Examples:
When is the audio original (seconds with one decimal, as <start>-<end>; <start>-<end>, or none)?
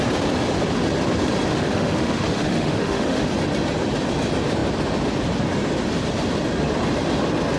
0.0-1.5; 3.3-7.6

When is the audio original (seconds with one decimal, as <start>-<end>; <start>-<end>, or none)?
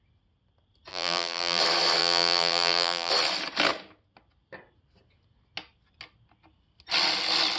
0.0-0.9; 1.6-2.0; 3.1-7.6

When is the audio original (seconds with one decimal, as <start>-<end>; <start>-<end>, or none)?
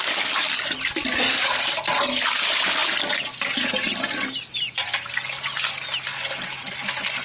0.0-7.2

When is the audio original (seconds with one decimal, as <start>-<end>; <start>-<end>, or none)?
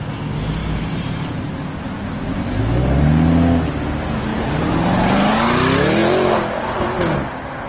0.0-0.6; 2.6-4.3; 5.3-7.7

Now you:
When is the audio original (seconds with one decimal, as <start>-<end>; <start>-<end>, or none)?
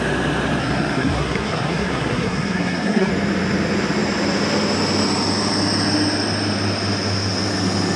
0.0-0.6; 3.1-8.0